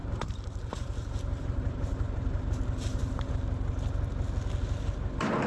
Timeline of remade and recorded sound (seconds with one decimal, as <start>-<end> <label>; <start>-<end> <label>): 0.0-3.3 remade; 3.3-5.5 recorded